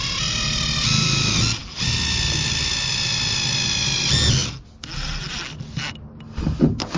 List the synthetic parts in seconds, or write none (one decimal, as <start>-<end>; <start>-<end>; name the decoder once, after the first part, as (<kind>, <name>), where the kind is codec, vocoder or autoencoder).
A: none